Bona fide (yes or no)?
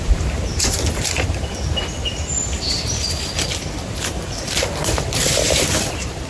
no